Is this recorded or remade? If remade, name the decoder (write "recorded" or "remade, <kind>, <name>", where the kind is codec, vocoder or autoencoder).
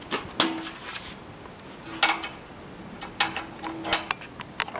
recorded